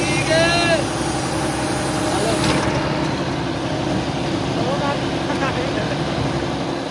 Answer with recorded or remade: recorded